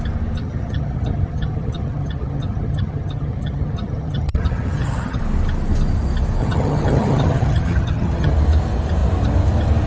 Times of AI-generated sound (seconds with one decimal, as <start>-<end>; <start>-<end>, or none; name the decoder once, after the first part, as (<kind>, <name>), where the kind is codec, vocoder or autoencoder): 0.4-5.2 (vocoder, HiFi-GAN); 6.4-8.3